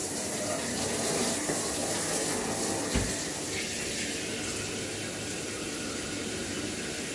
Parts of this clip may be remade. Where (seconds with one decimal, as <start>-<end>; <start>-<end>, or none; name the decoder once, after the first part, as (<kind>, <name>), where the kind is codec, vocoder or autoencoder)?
0.0-1.8 (vocoder, BigVGAN v2); 6.1-7.1